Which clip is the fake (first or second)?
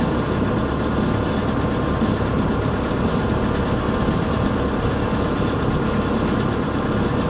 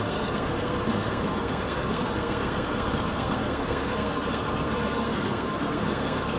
second